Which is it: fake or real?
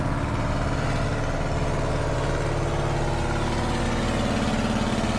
real